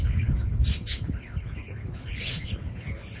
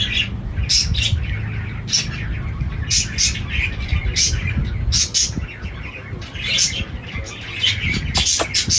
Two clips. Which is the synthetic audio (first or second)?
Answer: first